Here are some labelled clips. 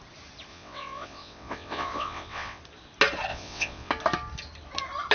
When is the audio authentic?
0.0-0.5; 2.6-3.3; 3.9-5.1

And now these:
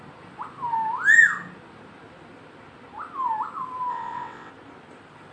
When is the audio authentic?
0.0-3.9; 4.5-5.3

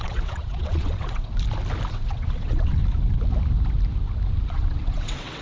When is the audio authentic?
1.3-1.9; 2.8-4.5